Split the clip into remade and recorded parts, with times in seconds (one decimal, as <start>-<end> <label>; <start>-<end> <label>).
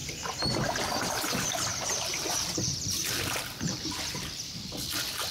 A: 0.0-1.7 recorded; 1.7-4.2 remade; 4.2-5.3 recorded